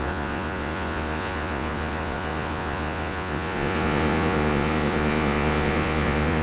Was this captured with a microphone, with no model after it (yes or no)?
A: no